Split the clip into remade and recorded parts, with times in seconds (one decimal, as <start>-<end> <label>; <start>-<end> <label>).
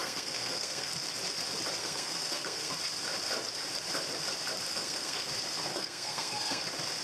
0.0-0.9 remade; 0.9-1.8 recorded; 1.8-2.7 remade; 2.7-4.7 recorded; 4.7-5.3 remade; 5.3-5.7 recorded; 5.7-6.6 remade; 6.6-7.0 recorded